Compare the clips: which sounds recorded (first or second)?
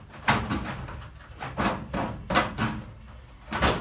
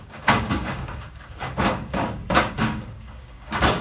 first